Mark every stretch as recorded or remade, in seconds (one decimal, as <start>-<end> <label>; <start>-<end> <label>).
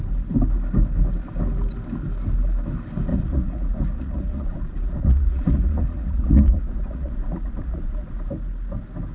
0.0-3.1 recorded; 3.1-8.3 remade; 8.3-9.1 recorded